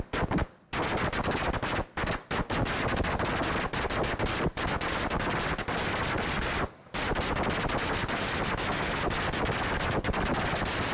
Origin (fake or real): real